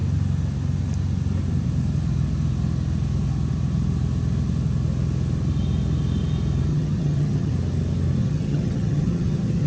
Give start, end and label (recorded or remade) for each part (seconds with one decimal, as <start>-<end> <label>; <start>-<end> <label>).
0.0-6.7 recorded; 6.7-7.5 remade; 7.5-8.2 recorded; 8.2-9.7 remade